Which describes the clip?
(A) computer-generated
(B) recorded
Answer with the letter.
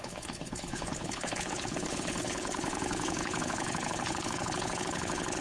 A